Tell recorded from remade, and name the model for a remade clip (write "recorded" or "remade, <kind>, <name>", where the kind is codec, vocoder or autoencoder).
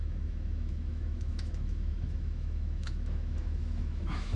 remade, autoencoder, DAC-VAE